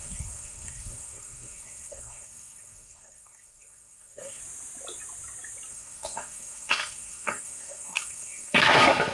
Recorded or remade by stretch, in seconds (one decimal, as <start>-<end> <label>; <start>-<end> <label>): 0.0-4.4 remade; 4.4-5.7 recorded; 5.7-9.1 remade